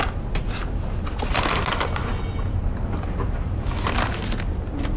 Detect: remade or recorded recorded